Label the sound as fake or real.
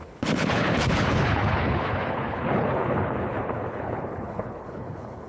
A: fake